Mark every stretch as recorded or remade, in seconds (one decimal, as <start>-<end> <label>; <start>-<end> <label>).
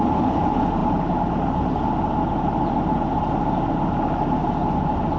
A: 0.0-5.2 recorded